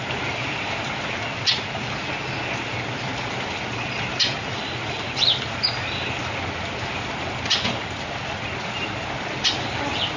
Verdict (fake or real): real